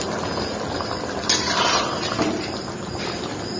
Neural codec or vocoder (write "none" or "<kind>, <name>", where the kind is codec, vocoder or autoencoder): none